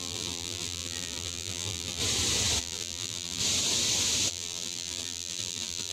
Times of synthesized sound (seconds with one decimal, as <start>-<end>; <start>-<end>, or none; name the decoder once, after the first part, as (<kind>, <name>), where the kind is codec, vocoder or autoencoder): 0.0-2.0 (vocoder, BigVGAN v2); 2.6-3.4; 4.3-5.9